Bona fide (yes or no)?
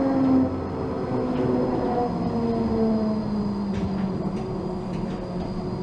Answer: yes